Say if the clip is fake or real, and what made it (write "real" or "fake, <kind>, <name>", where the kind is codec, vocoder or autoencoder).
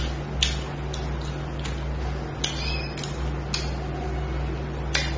real